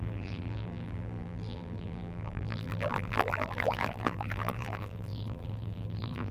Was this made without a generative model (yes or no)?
no